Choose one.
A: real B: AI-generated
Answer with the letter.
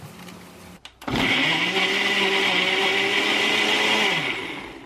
A